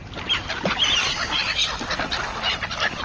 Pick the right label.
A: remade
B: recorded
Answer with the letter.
B